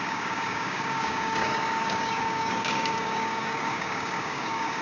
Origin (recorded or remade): remade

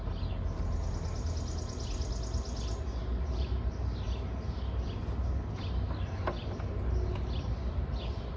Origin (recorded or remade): recorded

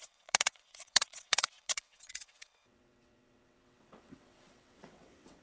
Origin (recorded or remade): remade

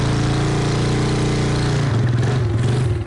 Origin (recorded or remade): recorded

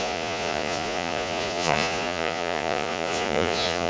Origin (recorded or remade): remade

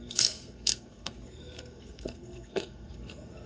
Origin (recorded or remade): remade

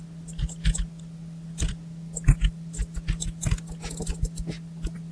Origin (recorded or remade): recorded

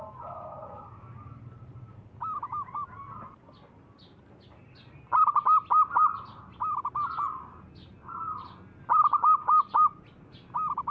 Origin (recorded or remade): recorded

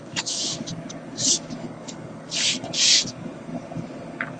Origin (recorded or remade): remade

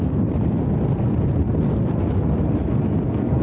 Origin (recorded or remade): recorded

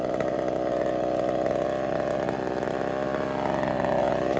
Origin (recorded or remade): recorded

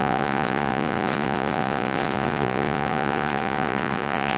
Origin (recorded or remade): remade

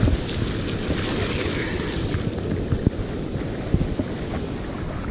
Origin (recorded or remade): recorded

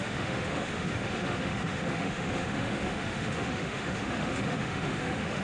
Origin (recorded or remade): remade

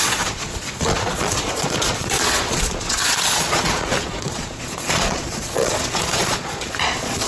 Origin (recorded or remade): remade